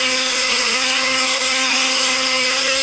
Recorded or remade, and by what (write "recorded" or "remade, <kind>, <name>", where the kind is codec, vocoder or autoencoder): remade, codec, SNAC